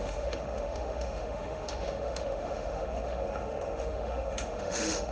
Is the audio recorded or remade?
remade